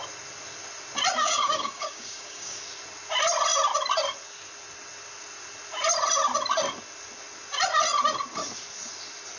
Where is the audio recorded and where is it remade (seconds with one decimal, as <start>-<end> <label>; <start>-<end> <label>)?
0.0-1.2 recorded; 1.2-2.6 remade; 2.6-9.4 recorded